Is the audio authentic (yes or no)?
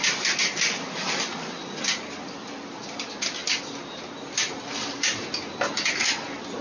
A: yes